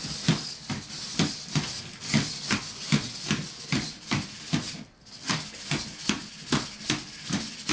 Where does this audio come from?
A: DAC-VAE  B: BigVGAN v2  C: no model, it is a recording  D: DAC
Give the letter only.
C